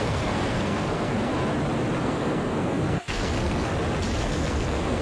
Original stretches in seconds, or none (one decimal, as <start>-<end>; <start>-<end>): 1.3-2.0; 3.7-4.2